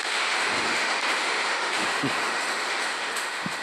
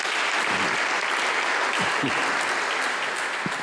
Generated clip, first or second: first